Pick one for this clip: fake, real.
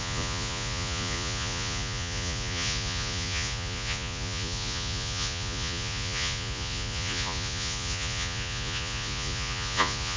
fake